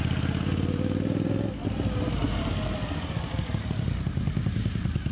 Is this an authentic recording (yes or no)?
yes